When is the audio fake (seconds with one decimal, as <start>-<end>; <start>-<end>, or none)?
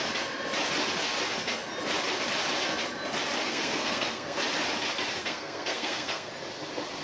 3.5-4.4; 5.2-6.3